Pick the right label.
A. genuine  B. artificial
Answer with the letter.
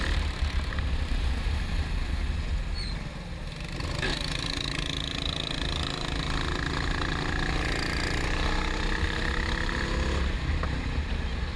A